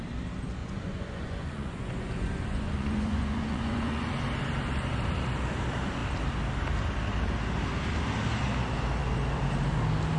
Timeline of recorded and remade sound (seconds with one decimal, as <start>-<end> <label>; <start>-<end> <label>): 0.0-0.6 recorded; 0.6-4.1 remade; 4.1-10.2 recorded

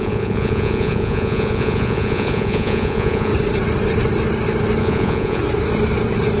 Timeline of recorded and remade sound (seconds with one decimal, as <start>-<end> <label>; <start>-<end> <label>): 0.0-3.3 remade; 3.3-4.8 recorded; 4.8-5.4 remade; 5.4-6.4 recorded

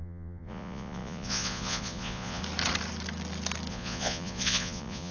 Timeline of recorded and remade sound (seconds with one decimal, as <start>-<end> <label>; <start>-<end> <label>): 0.0-2.4 remade; 2.4-3.7 recorded; 3.7-5.1 remade

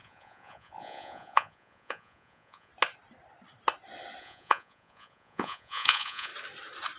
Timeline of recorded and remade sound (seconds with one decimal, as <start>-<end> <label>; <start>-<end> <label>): 0.0-2.7 remade; 2.7-4.2 recorded; 4.2-6.3 remade; 6.3-7.0 recorded

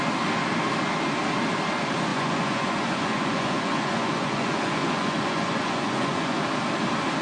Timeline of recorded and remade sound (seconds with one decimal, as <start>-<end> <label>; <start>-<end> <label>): 0.0-2.1 recorded; 2.1-6.4 remade; 6.4-7.2 recorded

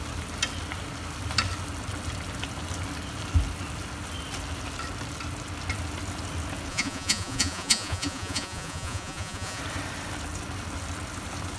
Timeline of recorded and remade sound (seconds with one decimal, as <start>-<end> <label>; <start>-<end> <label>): 0.0-6.7 recorded; 6.7-9.6 remade; 9.6-11.6 recorded

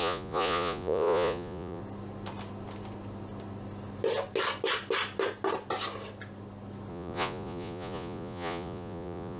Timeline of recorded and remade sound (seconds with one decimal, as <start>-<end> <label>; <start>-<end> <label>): 0.0-1.8 remade; 1.8-6.9 recorded; 6.9-9.4 remade